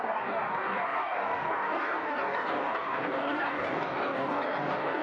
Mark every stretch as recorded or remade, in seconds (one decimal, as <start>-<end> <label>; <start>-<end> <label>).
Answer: 0.0-5.0 remade